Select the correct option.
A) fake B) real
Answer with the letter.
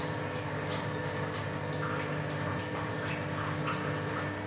B